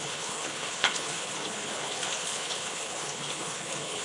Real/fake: fake